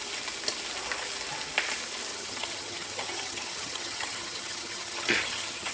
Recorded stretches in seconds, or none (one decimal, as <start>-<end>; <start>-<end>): 0.0-2.1